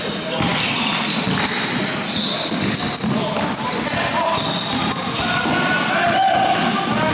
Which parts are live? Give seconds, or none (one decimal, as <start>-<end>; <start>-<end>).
0.0-7.1